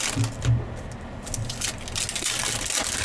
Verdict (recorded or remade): recorded